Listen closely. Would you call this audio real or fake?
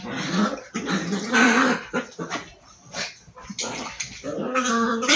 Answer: real